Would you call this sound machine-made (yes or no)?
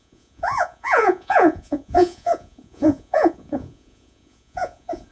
yes